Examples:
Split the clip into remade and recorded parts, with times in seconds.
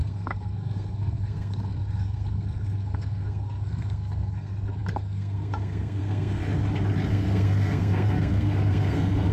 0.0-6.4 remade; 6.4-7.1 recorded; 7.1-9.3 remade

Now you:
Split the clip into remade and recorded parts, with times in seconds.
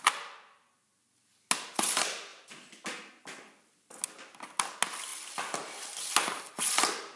0.0-7.2 recorded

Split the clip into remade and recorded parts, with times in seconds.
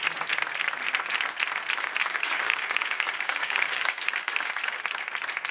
0.0-2.0 recorded; 2.0-4.8 remade; 4.8-5.5 recorded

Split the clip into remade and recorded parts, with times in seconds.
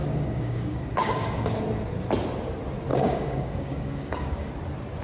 0.0-1.6 remade; 1.6-2.9 recorded; 2.9-4.5 remade; 4.5-5.0 recorded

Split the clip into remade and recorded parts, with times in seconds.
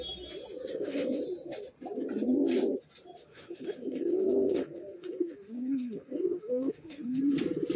0.0-0.7 recorded; 0.7-1.2 remade; 1.2-3.2 recorded; 3.2-7.2 remade; 7.2-7.8 recorded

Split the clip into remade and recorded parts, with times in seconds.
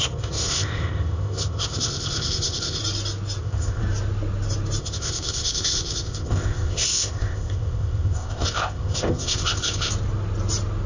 0.0-2.8 remade; 2.8-3.4 recorded; 3.4-3.8 remade; 3.8-4.8 recorded; 4.8-9.9 remade; 9.9-10.9 recorded